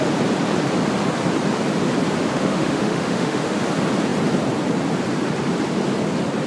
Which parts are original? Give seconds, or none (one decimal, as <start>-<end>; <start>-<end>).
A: 0.0-2.3; 3.6-6.5